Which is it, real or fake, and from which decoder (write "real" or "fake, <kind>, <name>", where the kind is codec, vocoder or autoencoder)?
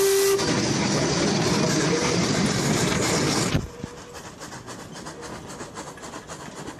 real